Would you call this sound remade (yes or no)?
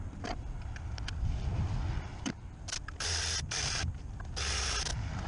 yes